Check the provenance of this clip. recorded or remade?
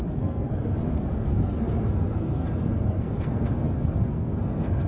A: remade